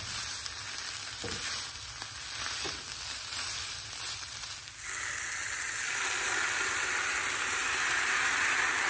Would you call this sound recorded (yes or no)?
yes